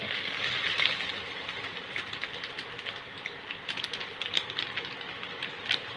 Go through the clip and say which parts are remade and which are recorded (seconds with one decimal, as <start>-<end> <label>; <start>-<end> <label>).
0.0-6.0 recorded